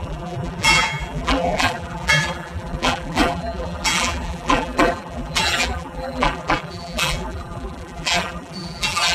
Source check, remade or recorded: remade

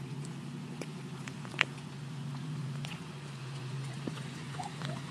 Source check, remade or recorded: remade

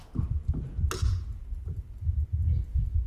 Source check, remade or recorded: recorded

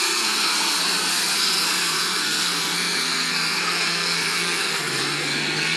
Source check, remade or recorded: remade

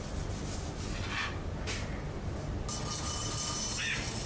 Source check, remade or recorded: recorded